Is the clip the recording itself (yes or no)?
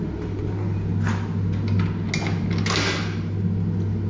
yes